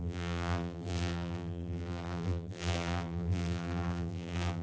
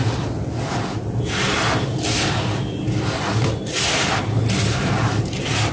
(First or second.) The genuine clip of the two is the second